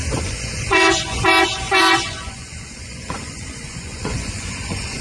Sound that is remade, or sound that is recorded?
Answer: remade